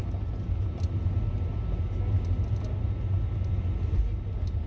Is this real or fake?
real